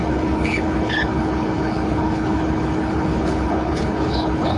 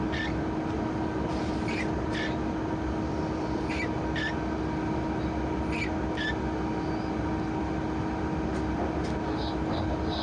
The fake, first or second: first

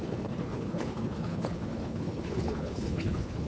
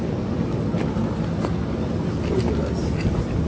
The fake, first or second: first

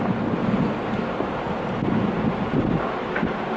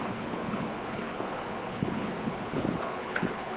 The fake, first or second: second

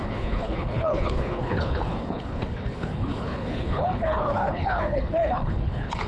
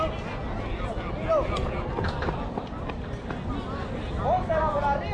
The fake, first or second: first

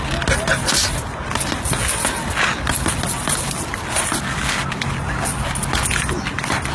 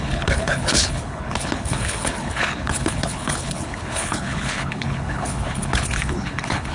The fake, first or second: second